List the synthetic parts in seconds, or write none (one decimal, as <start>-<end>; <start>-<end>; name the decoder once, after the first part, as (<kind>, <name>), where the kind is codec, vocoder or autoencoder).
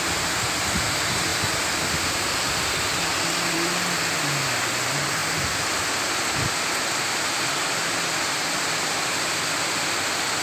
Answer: none